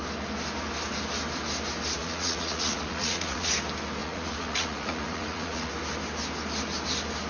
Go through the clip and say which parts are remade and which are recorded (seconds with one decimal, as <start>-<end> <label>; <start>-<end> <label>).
0.0-2.0 recorded; 2.0-3.5 remade; 3.5-4.0 recorded; 4.0-5.7 remade; 5.7-7.3 recorded